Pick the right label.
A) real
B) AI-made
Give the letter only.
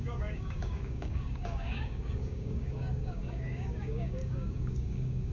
B